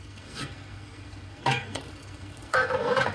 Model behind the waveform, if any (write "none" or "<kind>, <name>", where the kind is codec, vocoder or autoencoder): codec, SNAC